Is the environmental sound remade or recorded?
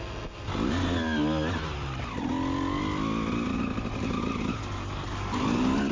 recorded